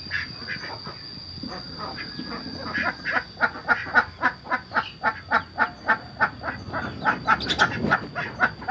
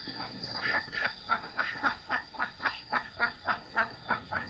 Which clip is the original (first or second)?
first